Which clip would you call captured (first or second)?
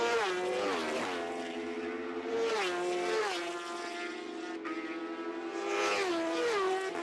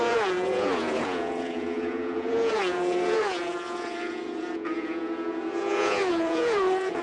first